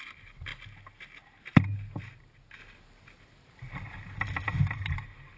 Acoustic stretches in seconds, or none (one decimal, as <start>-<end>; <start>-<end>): 0.0-5.4